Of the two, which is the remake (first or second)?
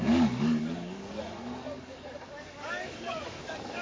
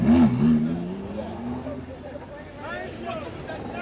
first